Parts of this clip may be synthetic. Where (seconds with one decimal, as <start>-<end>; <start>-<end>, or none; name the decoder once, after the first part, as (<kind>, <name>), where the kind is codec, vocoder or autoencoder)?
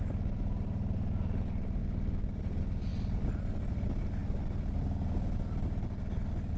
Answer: none